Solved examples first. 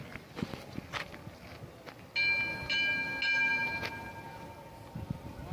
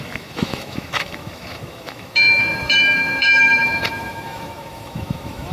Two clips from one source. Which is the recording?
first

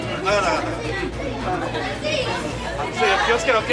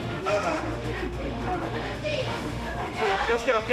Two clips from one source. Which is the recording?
first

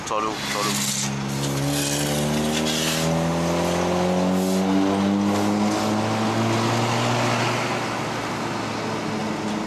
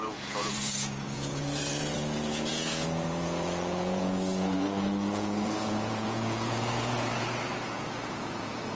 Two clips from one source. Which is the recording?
first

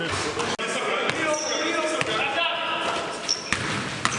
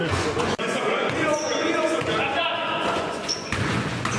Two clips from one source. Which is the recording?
first